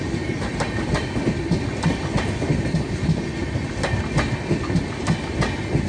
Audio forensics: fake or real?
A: real